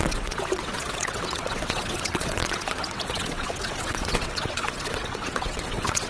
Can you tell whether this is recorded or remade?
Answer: remade